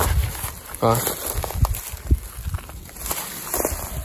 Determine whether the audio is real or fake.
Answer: real